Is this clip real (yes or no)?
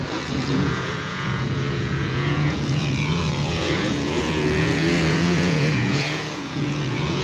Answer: no